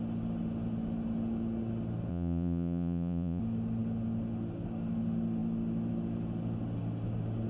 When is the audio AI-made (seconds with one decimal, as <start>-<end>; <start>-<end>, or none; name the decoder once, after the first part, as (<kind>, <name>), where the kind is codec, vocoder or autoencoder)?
2.1-3.4 (vocoder, Vocos)